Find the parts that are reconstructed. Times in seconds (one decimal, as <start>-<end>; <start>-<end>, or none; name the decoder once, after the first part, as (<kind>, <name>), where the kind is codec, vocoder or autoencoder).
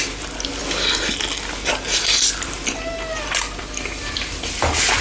none